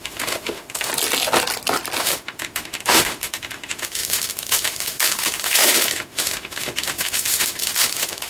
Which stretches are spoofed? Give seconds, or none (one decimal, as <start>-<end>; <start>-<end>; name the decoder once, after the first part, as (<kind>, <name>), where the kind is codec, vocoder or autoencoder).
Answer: 0.0-0.9 (autoencoder, DAC-VAE); 2.0-8.3